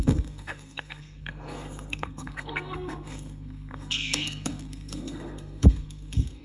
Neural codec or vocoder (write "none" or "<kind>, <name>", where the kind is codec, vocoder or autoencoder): codec, SNAC